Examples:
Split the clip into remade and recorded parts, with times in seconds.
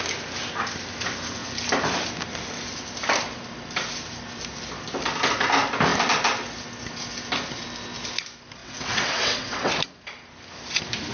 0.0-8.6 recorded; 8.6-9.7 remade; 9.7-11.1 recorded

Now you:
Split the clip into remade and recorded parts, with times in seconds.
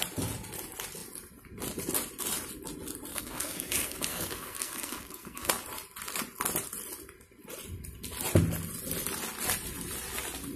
0.0-3.1 recorded; 3.1-5.5 remade; 5.5-10.6 recorded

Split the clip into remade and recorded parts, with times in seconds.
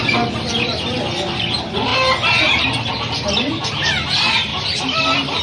0.0-1.9 recorded; 1.9-2.6 remade; 2.6-4.5 recorded; 4.5-5.4 remade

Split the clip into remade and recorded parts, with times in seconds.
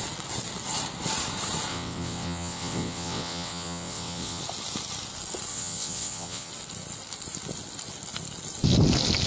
0.0-1.7 recorded; 1.7-4.4 remade; 4.4-5.5 recorded; 5.5-6.5 remade; 6.5-9.3 recorded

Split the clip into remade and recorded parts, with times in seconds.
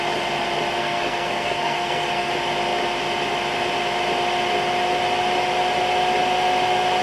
0.0-0.8 recorded; 0.8-2.3 remade; 2.3-7.0 recorded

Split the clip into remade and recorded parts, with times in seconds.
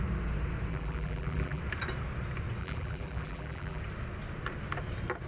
0.0-0.7 recorded; 0.7-1.6 remade; 1.6-2.6 recorded; 2.6-3.8 remade; 3.8-5.3 recorded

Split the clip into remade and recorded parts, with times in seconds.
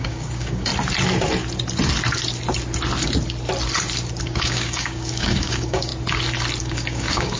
0.0-0.7 remade; 0.7-4.2 recorded; 4.2-5.9 remade; 5.9-6.6 recorded; 6.6-7.4 remade